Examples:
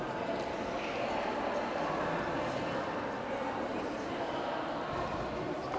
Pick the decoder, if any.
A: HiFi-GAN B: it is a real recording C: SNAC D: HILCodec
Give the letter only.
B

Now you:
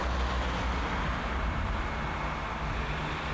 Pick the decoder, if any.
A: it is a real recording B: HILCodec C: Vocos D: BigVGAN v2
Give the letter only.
A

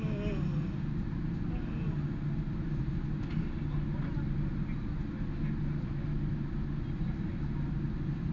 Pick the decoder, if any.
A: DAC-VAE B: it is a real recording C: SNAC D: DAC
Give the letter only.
B